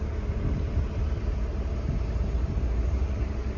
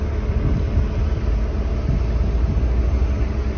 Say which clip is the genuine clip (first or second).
second